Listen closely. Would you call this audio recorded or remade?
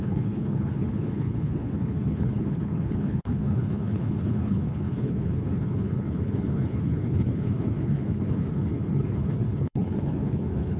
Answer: remade